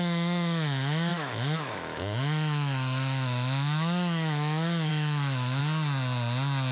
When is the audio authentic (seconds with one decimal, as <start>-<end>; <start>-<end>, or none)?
5.6-6.7